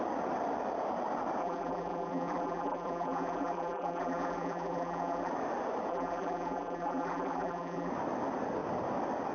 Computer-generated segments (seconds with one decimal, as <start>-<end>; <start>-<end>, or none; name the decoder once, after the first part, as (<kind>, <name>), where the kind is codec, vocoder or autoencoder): 1.4-5.3 (vocoder, BigVGAN v2); 5.9-7.9